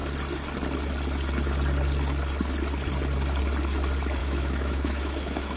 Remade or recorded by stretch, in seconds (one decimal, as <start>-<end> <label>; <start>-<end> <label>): 0.0-4.2 recorded; 4.2-5.6 remade

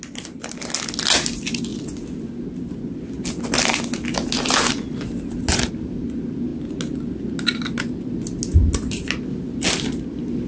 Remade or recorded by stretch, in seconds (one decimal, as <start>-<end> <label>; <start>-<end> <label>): 0.0-10.5 recorded

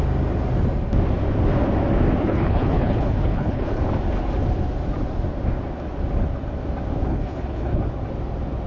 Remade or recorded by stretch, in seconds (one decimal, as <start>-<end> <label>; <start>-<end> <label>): 0.0-2.2 recorded; 2.2-3.8 remade; 3.8-7.1 recorded; 7.1-7.8 remade; 7.8-8.7 recorded

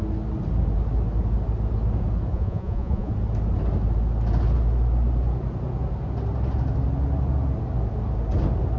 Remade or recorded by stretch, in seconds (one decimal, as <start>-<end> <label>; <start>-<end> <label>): 0.0-2.3 recorded; 2.3-3.1 remade; 3.1-8.8 recorded